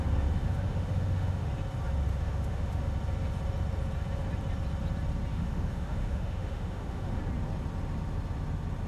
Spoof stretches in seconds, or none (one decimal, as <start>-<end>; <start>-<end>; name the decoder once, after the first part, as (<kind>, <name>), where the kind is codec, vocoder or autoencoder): 0.4-1.5 (autoencoder, DAC-VAE); 2.1-2.9; 5.3-7.2